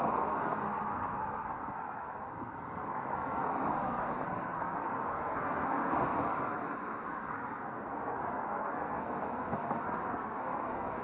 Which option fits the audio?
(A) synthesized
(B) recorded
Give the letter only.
A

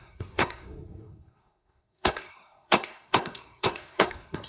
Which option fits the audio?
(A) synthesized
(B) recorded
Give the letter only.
A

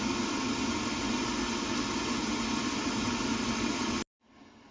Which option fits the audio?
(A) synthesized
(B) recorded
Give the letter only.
B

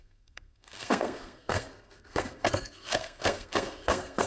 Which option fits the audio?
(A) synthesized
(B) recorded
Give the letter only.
A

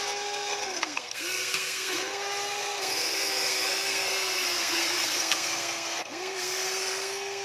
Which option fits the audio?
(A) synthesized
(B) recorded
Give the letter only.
A